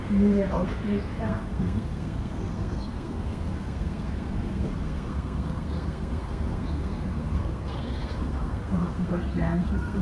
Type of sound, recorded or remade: remade